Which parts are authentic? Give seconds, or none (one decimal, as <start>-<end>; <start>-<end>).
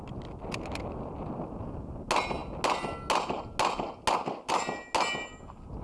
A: 0.0-5.8